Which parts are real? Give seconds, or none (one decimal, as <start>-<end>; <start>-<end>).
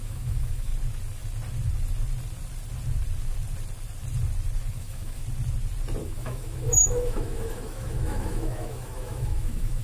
0.7-4.7; 5.2-6.0